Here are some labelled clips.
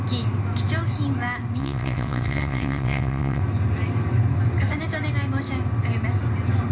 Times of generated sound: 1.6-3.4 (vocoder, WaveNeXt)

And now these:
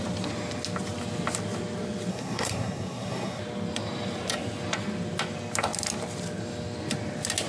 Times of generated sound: 2.1-3.4 (codec, SNAC)

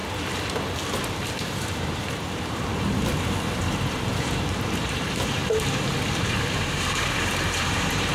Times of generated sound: 1.4-8.1 (vocoder, BigVGAN v2)

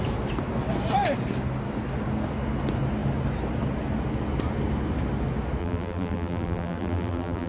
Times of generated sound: 5.6-7.5 (vocoder, BigVGAN v2)

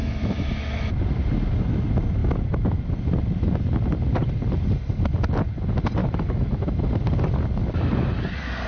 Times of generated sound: 0.0-0.9 (autoencoder, DAC-VAE); 2.2-2.8; 6.0-6.7

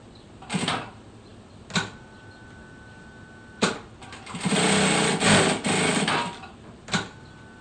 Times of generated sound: none

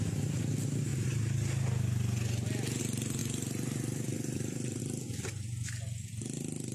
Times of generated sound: 3.2-4.8 (vocoder, BigVGAN v2)

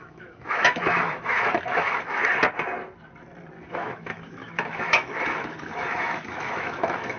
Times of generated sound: 0.0-2.2 (autoencoder, DAC-VAE); 3.7-7.2